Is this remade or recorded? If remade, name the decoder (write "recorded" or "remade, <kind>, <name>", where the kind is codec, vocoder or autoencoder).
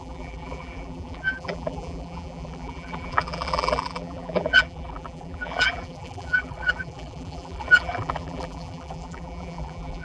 remade, vocoder, BigVGAN v2